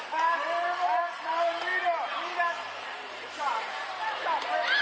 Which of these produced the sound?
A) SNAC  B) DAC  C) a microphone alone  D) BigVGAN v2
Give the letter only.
D